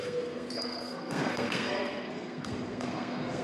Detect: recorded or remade remade